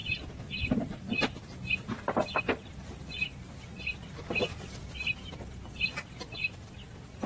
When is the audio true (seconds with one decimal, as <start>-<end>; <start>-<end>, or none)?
0.0-7.3